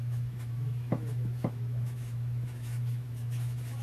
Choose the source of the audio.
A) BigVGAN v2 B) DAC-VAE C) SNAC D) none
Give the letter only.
B